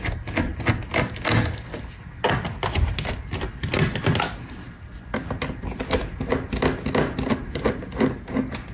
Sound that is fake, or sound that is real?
real